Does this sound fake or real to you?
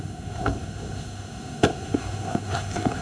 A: fake